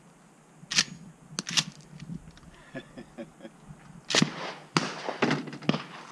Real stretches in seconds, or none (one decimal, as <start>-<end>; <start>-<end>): 0.0-6.1